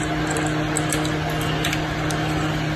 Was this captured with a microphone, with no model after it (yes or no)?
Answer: yes